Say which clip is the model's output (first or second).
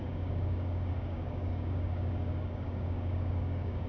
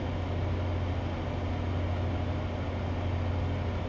first